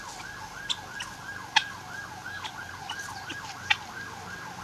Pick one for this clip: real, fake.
real